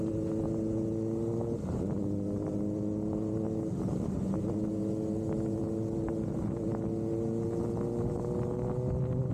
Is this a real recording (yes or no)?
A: yes